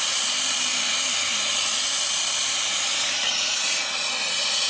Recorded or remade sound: recorded